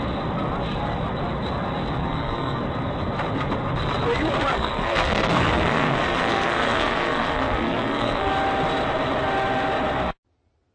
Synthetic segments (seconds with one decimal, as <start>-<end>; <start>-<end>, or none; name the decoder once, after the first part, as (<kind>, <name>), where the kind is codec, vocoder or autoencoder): 2.0-2.6 (codec, SNAC); 4.5-8.3